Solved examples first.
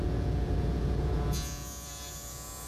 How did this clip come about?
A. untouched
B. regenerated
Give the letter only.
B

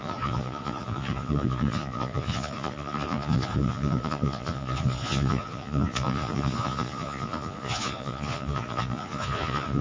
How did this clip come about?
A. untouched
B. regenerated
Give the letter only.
B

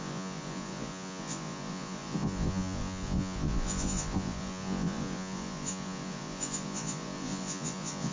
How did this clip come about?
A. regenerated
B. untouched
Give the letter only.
A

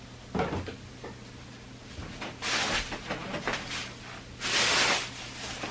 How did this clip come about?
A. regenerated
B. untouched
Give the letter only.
B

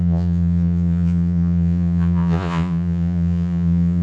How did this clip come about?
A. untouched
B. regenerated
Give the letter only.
B